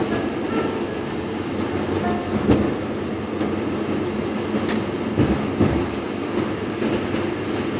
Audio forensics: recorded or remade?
recorded